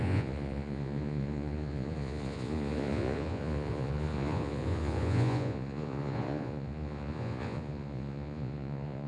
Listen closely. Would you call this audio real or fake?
fake